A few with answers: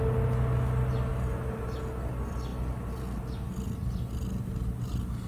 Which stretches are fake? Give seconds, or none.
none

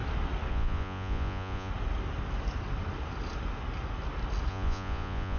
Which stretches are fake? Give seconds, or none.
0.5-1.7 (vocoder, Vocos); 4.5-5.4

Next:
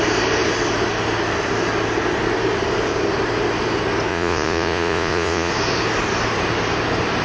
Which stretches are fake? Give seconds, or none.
4.1-5.5 (vocoder, Vocos)

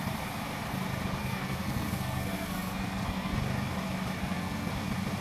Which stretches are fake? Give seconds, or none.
1.2-3.4 (codec, SNAC); 4.2-4.7

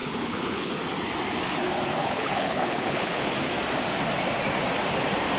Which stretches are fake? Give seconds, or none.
0.0-0.7 (codec, HILCodec); 2.0-3.3

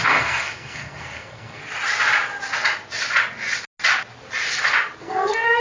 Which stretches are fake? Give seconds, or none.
0.0-1.6 (codec, SNAC); 5.0-5.6

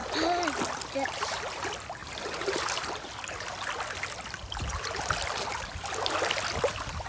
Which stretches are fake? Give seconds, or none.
2.0-2.9 (vocoder, BigVGAN v2)